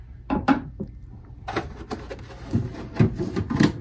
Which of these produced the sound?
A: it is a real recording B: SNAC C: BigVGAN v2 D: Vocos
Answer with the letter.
A